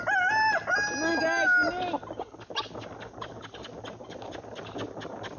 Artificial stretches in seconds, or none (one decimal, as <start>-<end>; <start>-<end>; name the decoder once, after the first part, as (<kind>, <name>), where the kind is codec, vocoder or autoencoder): none